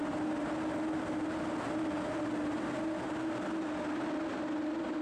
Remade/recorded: recorded